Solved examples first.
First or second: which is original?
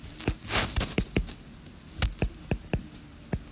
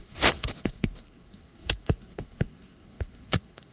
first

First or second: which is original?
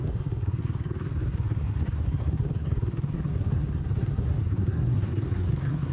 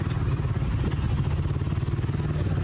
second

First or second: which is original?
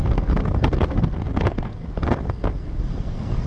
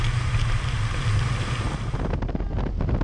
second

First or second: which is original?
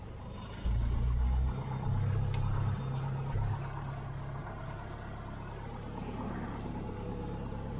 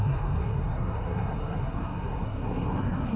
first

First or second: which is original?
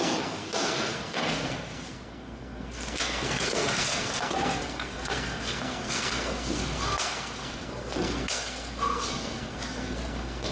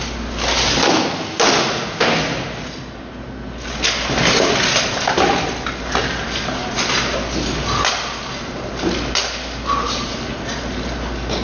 second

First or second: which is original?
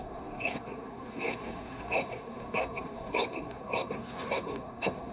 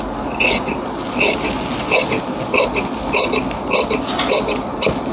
second